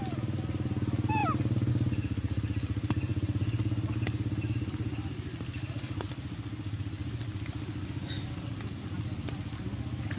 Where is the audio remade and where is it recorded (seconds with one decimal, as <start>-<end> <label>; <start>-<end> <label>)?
0.0-10.2 recorded